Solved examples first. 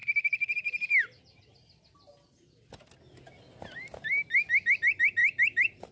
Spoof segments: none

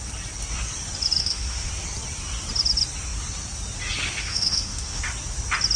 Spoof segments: 1.2-1.7; 4.2-5.0

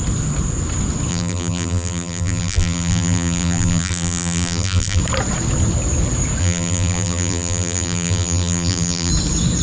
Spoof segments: 1.1-5.0; 6.4-9.1

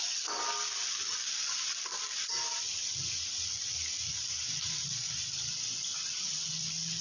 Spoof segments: none

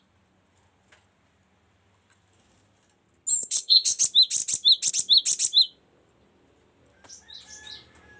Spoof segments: 3.4-4.0

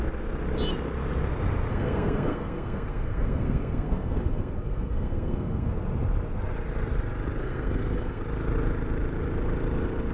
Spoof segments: 1.7-5.7; 7.4-8.2

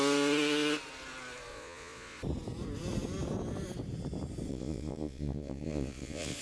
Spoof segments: 1.5-2.2; 4.5-6.4

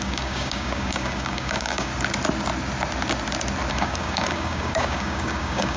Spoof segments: 0.0-1.9; 3.7-5.8